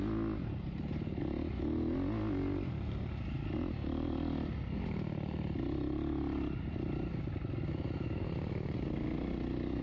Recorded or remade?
recorded